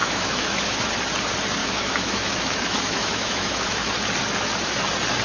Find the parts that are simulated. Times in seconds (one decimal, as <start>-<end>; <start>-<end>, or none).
0.0-0.9; 1.6-3.9